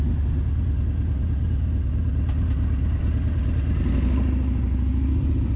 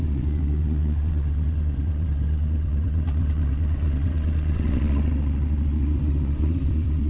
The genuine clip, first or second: first